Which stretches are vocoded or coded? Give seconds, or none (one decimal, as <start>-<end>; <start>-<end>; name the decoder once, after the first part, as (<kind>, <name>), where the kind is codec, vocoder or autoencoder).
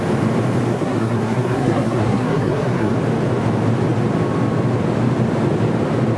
0.7-2.9 (codec, SNAC)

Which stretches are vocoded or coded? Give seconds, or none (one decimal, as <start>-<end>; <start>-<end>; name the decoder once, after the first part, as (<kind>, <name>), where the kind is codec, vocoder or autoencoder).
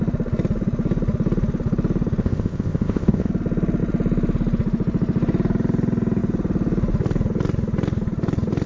2.2-3.3 (codec, ZipCodec)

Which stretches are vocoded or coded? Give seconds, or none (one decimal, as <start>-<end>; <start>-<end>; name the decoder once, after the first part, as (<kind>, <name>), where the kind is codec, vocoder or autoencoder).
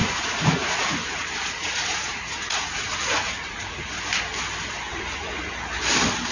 0.0-3.8 (vocoder, Vocos); 4.9-5.5